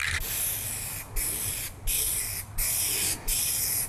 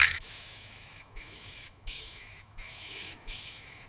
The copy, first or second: second